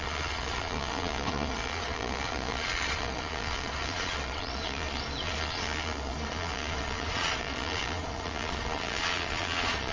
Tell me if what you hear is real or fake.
fake